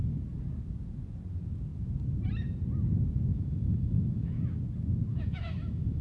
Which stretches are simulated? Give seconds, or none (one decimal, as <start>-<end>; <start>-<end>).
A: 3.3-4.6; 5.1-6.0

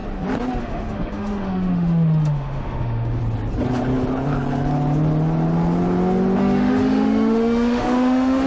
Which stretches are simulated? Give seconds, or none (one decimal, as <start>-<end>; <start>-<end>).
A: 0.6-3.2; 6.4-8.5

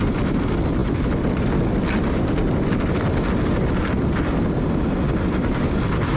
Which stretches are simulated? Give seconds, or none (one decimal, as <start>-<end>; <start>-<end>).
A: none

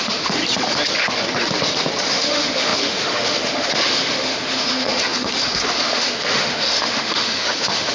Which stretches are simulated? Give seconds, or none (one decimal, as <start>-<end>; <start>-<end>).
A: 0.0-0.4; 2.1-7.9

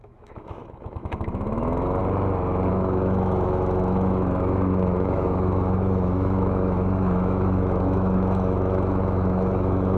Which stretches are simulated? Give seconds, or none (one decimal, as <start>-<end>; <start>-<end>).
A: 0.0-2.0; 2.7-10.0

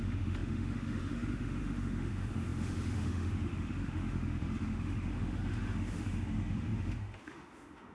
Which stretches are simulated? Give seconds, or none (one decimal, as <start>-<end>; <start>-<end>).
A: 0.0-7.9